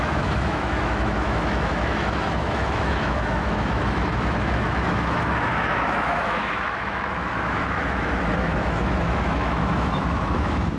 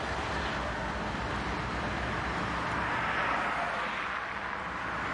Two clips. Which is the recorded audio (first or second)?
second